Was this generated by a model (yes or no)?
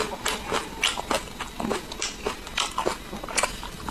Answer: no